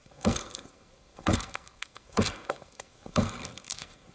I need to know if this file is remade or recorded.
remade